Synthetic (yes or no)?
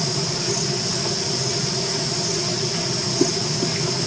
no